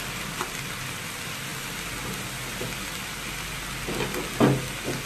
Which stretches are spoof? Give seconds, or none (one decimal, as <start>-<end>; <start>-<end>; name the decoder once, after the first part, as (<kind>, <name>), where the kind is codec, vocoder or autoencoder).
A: none